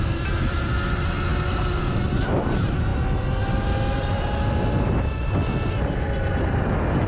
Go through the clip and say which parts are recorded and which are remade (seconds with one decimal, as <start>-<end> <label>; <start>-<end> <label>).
0.0-7.1 recorded